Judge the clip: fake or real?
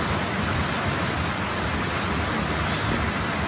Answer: real